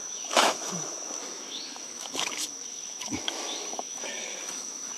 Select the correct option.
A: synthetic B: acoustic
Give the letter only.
A